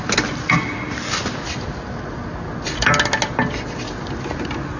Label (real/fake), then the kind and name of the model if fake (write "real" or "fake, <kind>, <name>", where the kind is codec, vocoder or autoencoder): real